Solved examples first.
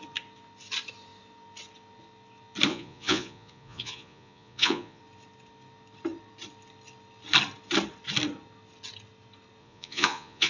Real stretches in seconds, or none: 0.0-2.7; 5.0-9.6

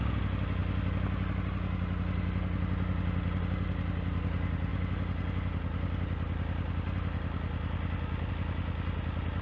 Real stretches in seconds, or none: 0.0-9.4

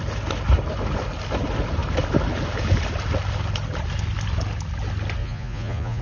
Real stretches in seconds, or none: 0.0-5.2